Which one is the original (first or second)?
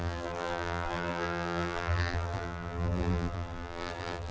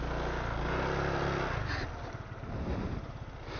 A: second